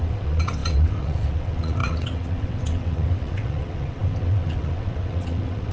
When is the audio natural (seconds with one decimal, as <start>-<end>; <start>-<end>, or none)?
none